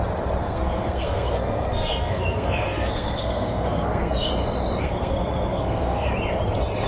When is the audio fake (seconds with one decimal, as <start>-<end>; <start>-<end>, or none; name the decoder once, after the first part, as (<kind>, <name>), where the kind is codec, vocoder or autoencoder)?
0.4-4.3 (codec, SNAC); 4.8-6.1